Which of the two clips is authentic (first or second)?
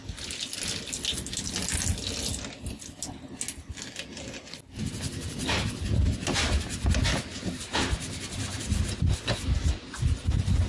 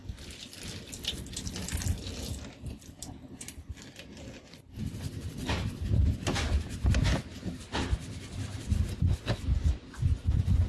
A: first